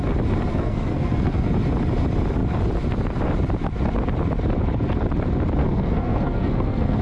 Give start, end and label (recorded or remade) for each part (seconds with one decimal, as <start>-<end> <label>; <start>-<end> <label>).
0.0-0.5 recorded; 0.5-1.5 remade; 1.5-5.6 recorded; 5.6-7.0 remade